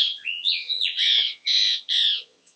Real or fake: fake